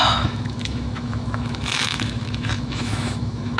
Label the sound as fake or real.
fake